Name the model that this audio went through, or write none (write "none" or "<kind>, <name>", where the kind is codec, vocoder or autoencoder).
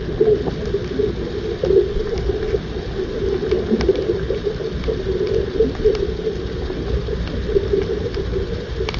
none